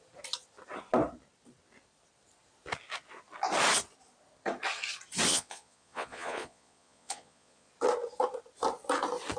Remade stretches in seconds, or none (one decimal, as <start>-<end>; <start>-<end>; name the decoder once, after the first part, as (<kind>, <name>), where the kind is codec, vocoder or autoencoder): 5.3-7.7 (vocoder, Vocos)